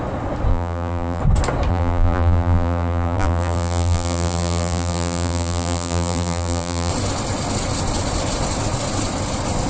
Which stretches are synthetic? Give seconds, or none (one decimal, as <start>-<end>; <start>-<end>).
0.5-1.2; 1.7-6.9